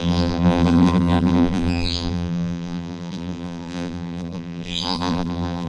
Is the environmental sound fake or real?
fake